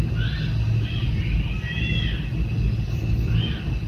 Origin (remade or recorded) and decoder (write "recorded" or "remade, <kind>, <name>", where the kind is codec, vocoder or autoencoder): recorded